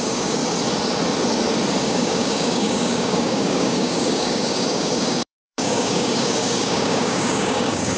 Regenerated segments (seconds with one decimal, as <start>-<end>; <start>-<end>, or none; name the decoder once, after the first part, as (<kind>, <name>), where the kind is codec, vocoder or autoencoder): 0.0-0.4 (codec, DAC); 1.8-8.0